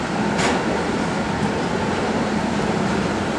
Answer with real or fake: real